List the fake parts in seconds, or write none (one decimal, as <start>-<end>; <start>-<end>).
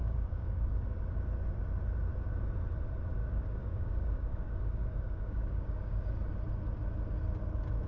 0.0-0.8; 3.2-6.0